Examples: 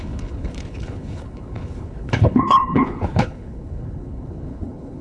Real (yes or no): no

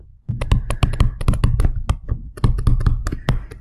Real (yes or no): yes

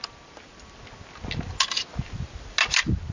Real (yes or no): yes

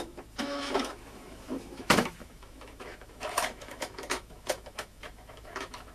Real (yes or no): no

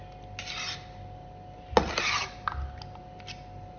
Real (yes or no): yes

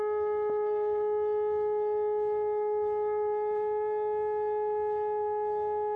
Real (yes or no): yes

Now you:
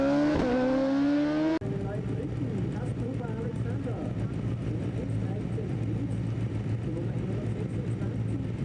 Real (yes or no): yes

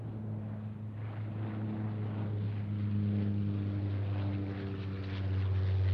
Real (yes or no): yes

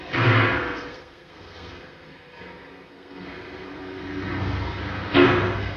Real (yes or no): no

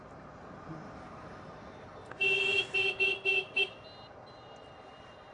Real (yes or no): no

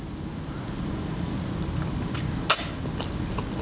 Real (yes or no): yes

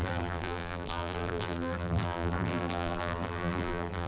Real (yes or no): no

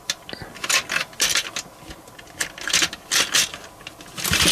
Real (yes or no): yes